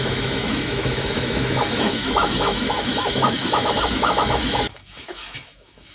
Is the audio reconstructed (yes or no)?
yes